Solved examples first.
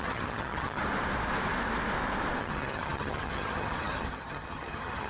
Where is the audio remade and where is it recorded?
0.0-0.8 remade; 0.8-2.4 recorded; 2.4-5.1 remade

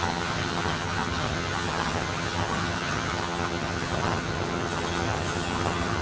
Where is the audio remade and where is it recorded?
0.0-6.0 remade

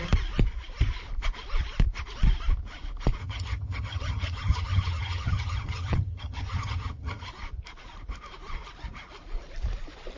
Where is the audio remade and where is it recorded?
0.0-3.2 recorded; 3.2-7.3 remade; 7.3-10.2 recorded

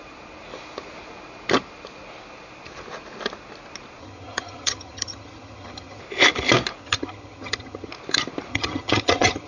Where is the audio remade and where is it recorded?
0.0-4.0 recorded; 4.0-6.0 remade; 6.0-6.8 recorded; 6.8-7.9 remade; 7.9-8.5 recorded; 8.5-9.5 remade